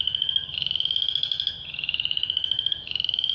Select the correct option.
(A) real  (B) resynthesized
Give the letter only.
B